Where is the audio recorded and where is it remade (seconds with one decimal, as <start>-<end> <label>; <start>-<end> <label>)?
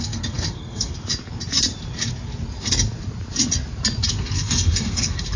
0.0-0.9 remade; 0.9-4.1 recorded; 4.1-5.4 remade